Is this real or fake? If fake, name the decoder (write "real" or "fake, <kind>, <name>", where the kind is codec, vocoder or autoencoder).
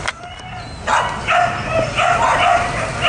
real